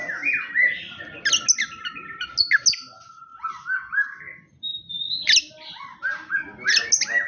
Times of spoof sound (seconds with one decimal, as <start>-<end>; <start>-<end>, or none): none